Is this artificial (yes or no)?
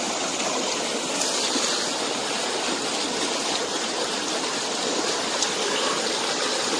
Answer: no